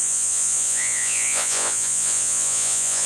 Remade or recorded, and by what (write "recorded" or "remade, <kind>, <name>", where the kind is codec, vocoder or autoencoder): remade, vocoder, Vocos